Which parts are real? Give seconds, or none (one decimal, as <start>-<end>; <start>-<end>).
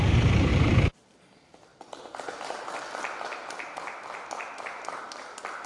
0.0-0.5; 1.2-1.7; 2.4-5.7